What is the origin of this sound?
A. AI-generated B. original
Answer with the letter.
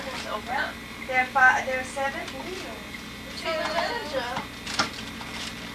B